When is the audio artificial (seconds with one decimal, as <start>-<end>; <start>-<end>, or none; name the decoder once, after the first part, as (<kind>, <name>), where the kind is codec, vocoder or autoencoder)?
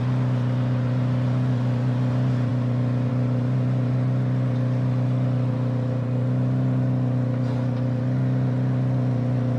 none